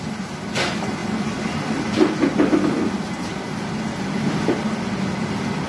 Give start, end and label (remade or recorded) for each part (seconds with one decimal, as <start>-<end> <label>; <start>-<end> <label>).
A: 0.0-5.7 recorded